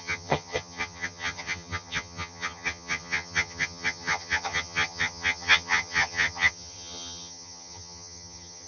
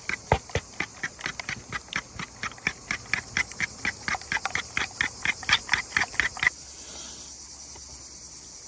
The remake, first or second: first